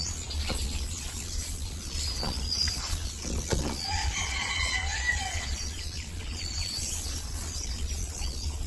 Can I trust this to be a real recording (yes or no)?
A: no